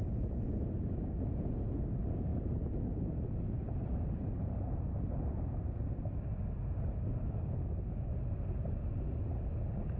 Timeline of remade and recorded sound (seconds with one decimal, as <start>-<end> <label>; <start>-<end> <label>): 0.0-2.3 recorded; 2.3-6.0 remade; 6.0-8.1 recorded; 8.1-8.8 remade; 8.8-10.0 recorded